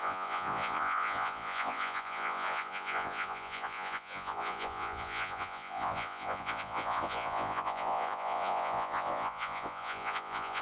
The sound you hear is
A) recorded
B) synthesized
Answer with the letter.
B